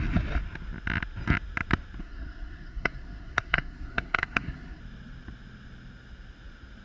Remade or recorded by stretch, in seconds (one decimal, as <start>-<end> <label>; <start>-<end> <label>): 0.0-2.0 recorded; 2.0-4.8 remade; 4.8-6.8 recorded